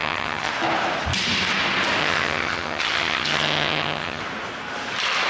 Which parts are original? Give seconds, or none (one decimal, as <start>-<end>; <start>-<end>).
0.5-2.0; 4.2-5.3